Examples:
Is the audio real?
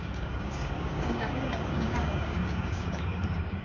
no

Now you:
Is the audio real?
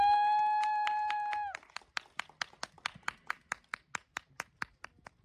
yes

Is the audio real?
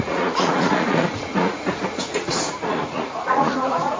no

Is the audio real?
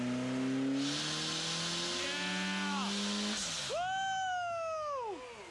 yes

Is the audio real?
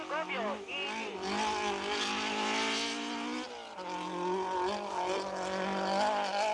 yes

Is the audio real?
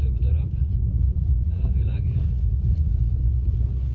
no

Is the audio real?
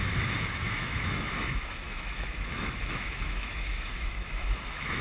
no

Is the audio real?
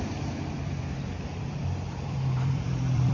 no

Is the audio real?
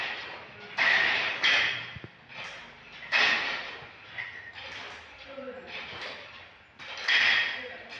yes